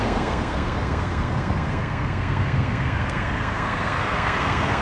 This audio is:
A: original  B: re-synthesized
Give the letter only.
B